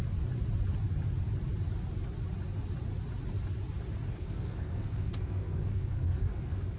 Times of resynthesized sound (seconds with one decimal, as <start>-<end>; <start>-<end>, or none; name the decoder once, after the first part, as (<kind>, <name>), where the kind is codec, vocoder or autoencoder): 4.1-6.8 (codec, SNAC)